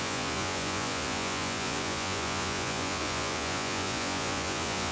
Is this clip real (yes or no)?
no